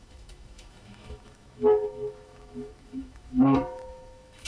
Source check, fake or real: fake